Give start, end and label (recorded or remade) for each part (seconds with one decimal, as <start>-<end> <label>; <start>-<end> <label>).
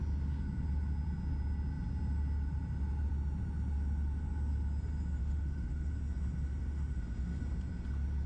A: 0.0-5.2 recorded; 5.2-5.9 remade; 5.9-6.6 recorded; 6.6-7.4 remade; 7.4-8.3 recorded